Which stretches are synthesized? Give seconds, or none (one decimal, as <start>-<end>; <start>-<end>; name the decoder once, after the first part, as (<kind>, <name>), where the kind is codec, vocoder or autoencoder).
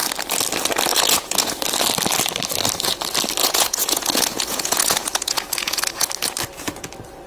0.9-1.5 (vocoder, Vocos); 3.4-6.1